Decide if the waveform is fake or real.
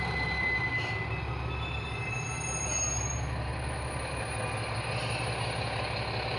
real